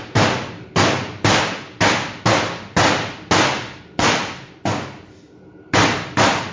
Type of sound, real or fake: real